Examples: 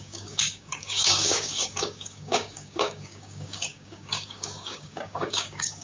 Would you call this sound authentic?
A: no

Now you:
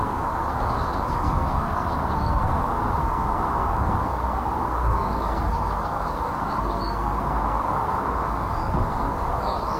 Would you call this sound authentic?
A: no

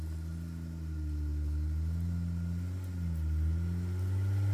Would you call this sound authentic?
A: yes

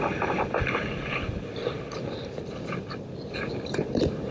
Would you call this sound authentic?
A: yes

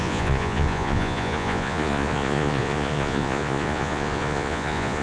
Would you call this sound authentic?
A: no